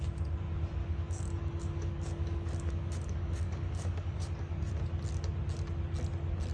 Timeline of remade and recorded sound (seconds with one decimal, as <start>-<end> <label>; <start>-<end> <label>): 0.0-0.8 recorded; 0.8-4.7 remade; 4.7-6.5 recorded